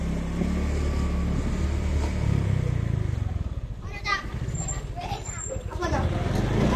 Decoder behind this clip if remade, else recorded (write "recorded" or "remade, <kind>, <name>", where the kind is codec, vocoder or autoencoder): recorded